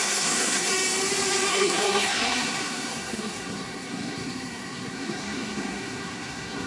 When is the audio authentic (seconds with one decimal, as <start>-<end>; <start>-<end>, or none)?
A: 0.7-1.5